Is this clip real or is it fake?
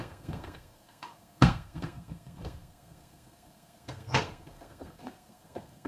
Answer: fake